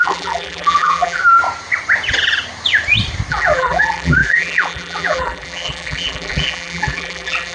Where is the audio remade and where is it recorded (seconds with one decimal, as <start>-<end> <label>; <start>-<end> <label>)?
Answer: 0.0-1.2 remade; 1.2-3.3 recorded; 3.3-7.5 remade